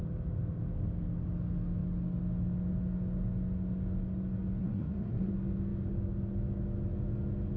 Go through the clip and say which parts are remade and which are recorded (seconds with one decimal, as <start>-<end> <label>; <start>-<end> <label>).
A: 0.0-4.6 recorded; 4.6-5.3 remade; 5.3-7.6 recorded